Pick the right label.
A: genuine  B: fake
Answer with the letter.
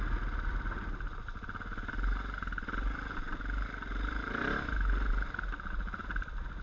A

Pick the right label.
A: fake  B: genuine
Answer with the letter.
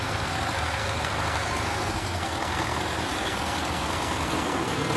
A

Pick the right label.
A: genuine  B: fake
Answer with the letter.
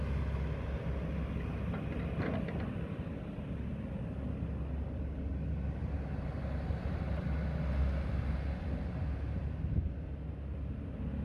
A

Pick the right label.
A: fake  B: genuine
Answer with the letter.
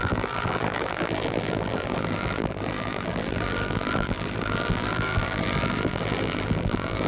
A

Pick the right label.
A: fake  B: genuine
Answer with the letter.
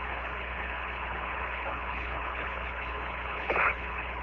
A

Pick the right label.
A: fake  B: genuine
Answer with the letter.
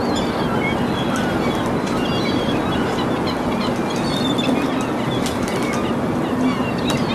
B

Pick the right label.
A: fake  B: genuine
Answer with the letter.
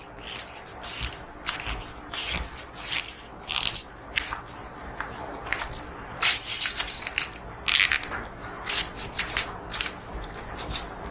B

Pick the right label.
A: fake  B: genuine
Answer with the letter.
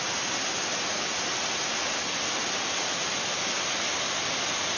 B